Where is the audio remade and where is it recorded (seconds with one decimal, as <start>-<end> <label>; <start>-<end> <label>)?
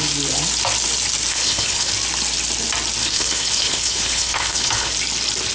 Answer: 0.0-1.3 recorded; 1.3-1.9 remade; 1.9-3.0 recorded; 3.0-4.9 remade; 4.9-5.5 recorded